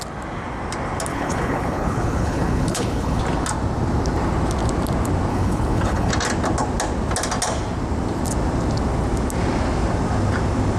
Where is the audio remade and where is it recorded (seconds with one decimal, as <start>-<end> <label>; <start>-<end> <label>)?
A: 0.0-1.1 recorded; 1.1-3.2 remade; 3.2-5.3 recorded; 5.3-6.1 remade; 6.1-10.8 recorded